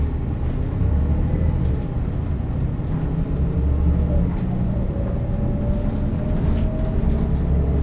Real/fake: real